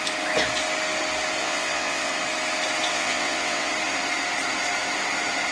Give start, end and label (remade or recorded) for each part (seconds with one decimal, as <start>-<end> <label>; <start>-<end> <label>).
0.0-1.4 recorded; 1.4-2.1 remade; 2.1-2.9 recorded; 2.9-3.7 remade; 3.7-5.5 recorded